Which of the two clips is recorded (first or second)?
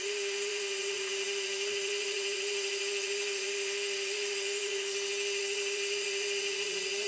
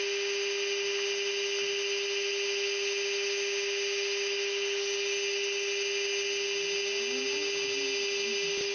second